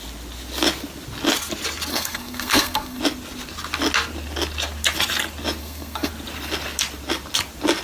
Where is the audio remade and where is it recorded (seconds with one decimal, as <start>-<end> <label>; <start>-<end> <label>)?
0.0-1.9 recorded; 1.9-3.0 remade; 3.0-5.6 recorded; 5.6-6.1 remade; 6.1-7.8 recorded